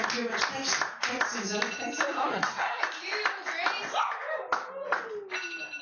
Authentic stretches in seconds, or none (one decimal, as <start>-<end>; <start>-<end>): 0.0-2.2; 2.8-5.8